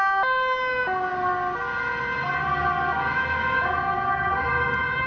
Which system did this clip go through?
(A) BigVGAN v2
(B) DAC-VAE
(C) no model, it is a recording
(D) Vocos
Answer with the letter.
C